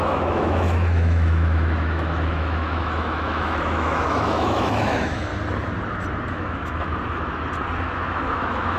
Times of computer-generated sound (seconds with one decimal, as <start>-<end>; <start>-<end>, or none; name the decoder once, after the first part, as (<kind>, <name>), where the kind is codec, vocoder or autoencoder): 0.0-5.3 (autoencoder, DAC-VAE); 6.3-6.9; 7.8-8.8